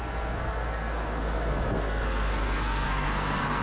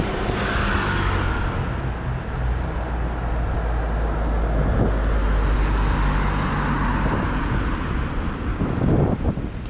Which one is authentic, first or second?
second